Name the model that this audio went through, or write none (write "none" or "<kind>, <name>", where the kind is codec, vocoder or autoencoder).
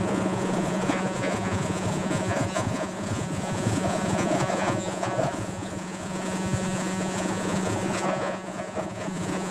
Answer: vocoder, Vocos